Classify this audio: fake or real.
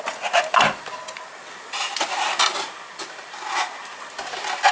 real